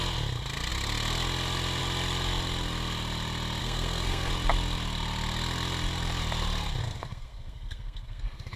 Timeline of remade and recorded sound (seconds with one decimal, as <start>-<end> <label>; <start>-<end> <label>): 0.0-3.6 recorded; 3.6-4.3 remade; 4.3-6.8 recorded; 6.8-8.6 remade